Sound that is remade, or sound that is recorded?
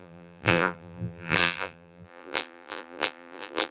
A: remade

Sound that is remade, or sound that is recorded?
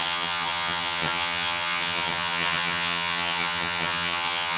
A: remade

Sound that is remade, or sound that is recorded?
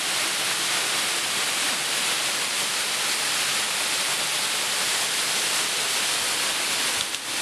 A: recorded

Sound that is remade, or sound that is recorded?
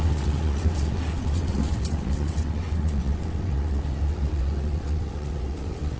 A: remade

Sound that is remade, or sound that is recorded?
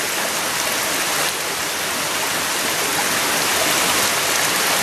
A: recorded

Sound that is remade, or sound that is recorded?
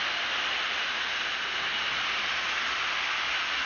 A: recorded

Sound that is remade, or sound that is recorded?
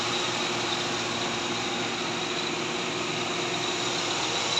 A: recorded